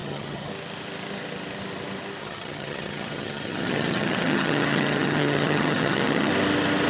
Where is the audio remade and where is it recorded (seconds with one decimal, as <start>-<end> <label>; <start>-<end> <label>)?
0.0-0.5 remade; 0.5-2.2 recorded; 2.2-6.3 remade; 6.3-6.9 recorded